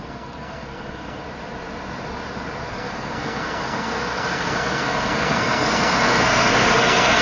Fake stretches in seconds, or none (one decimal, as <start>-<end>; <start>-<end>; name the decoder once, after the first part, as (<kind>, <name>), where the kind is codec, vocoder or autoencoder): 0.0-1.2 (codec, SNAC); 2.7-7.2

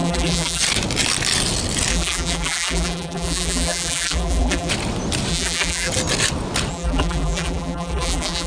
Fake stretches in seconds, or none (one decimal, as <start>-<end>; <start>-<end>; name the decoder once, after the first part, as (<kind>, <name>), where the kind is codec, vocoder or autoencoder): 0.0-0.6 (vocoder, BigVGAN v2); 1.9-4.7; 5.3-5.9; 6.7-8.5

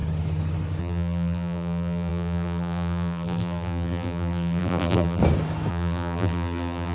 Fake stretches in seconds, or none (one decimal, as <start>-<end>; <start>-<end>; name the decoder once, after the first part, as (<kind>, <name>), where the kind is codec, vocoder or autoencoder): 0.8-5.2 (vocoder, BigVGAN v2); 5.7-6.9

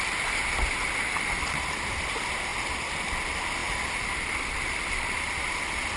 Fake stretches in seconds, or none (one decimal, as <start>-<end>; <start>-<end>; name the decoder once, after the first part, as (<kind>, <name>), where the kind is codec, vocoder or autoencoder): 3.6-5.6 (vocoder, BigVGAN v2)

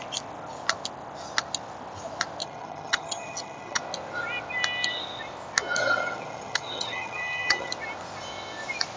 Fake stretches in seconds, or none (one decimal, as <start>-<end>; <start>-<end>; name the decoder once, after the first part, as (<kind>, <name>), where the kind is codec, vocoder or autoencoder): 2.4-3.8 (vocoder, HiFi-GAN); 5.8-7.7